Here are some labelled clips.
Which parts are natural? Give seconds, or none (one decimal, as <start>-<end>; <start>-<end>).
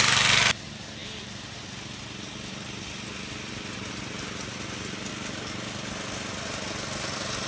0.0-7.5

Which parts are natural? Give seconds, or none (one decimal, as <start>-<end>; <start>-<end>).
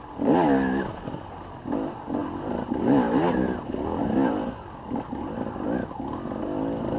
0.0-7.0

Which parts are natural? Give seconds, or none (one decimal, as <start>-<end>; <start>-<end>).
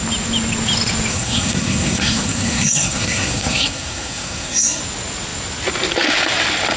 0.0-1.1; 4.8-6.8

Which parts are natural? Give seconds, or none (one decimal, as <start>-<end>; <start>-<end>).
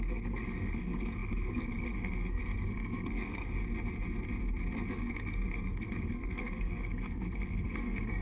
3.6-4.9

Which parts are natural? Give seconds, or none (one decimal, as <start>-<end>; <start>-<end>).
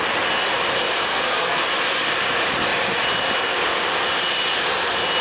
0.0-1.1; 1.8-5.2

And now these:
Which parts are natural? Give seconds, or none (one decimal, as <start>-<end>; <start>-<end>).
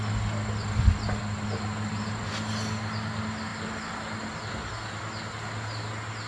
0.0-6.3